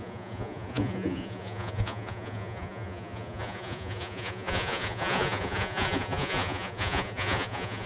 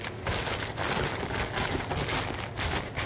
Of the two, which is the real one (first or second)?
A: second